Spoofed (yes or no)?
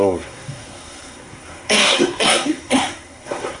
yes